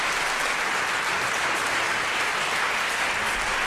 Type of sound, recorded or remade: recorded